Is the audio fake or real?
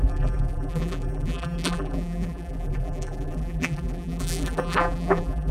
fake